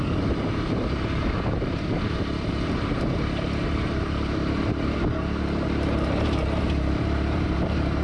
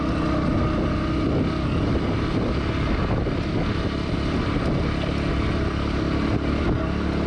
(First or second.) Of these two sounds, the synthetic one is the first